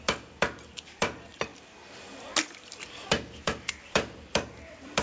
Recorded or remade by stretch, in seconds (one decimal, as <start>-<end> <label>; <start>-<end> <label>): 0.0-1.5 remade; 1.5-2.7 recorded; 2.7-5.0 remade